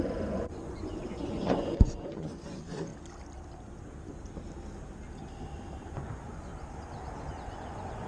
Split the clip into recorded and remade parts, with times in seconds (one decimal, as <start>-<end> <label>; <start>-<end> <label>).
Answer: 0.0-2.9 remade; 2.9-5.9 recorded; 5.9-6.5 remade; 6.5-7.3 recorded; 7.3-8.1 remade